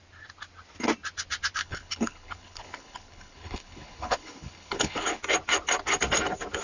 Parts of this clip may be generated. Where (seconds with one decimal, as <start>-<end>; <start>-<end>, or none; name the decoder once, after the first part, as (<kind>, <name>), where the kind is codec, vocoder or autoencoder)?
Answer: 1.6-5.2 (codec, HILCodec)